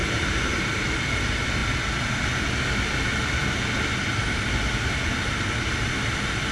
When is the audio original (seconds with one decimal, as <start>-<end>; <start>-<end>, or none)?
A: 0.8-6.5